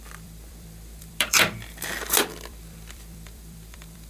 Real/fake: fake